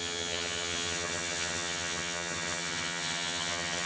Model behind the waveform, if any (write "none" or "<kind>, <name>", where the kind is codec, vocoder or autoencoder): vocoder, HiFi-GAN